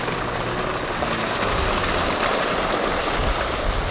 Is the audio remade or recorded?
recorded